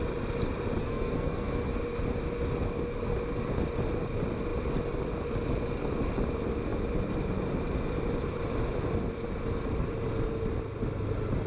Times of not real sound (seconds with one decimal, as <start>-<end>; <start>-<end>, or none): 0.8-1.7

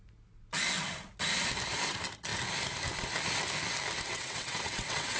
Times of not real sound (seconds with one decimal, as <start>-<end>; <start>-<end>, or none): 4.1-5.2

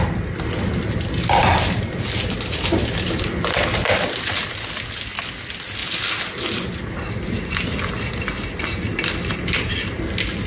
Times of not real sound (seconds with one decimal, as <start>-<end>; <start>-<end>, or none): none

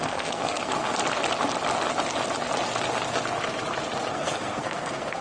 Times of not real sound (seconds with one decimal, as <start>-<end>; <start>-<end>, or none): 0.0-1.0; 4.1-5.2

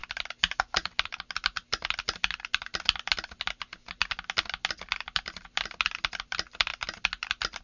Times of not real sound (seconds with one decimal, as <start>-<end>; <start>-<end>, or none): none